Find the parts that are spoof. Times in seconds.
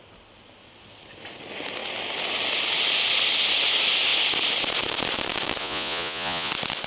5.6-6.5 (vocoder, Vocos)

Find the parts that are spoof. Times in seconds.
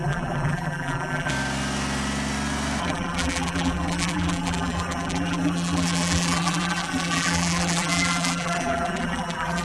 0.0-1.3 (vocoder, BigVGAN v2); 2.8-9.6